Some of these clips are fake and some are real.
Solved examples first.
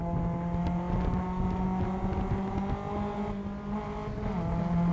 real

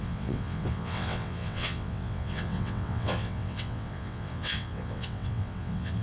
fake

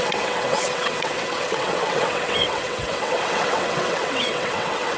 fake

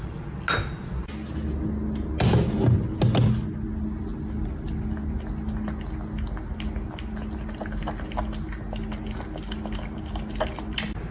real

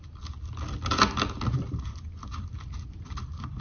real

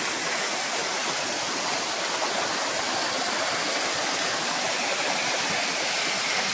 real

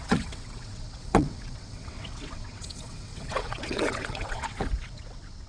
fake